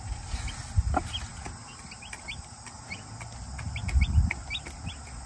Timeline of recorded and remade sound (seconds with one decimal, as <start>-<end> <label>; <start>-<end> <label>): 0.0-5.3 recorded